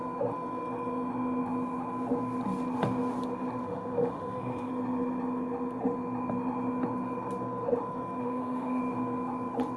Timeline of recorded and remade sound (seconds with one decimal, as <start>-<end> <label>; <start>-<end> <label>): 0.0-3.6 recorded; 3.6-4.7 remade; 4.7-8.2 recorded; 8.2-8.8 remade; 8.8-9.8 recorded